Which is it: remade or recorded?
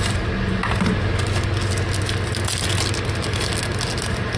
recorded